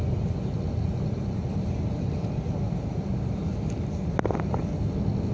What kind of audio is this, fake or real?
real